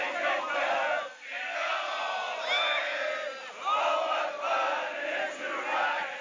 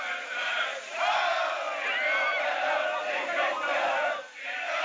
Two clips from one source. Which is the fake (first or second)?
second